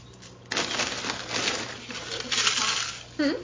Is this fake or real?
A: real